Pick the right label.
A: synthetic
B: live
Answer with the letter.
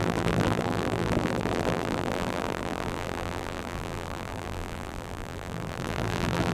A